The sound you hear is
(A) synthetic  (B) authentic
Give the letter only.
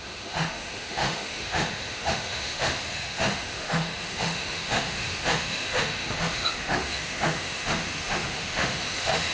A